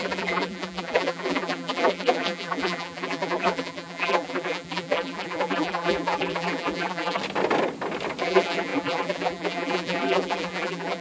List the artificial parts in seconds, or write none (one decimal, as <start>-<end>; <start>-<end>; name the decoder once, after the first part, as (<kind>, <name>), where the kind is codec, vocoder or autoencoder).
0.0-7.2 (vocoder, BigVGAN v2); 8.2-11.0